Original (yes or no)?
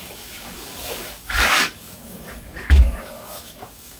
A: no